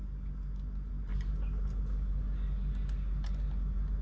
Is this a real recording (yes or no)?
yes